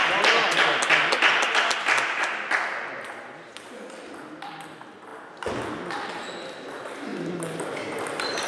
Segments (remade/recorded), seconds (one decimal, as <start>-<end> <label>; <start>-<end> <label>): 0.0-7.1 recorded; 7.1-7.8 remade; 7.8-8.5 recorded